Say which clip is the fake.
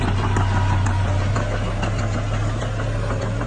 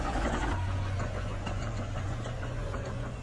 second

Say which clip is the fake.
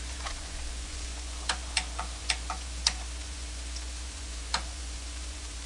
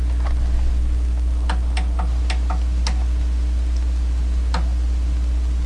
first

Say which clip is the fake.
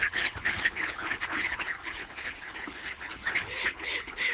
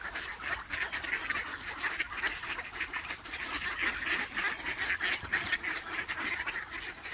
first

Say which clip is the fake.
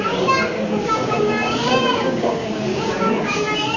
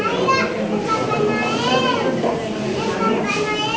first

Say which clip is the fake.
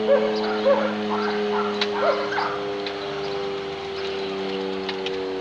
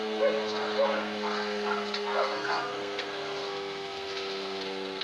second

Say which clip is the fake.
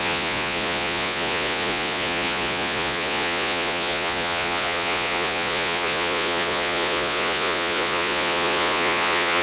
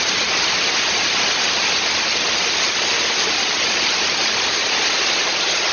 first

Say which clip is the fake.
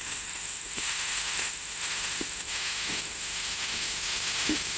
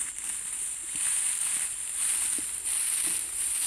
first